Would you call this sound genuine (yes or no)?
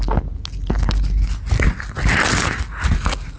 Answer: yes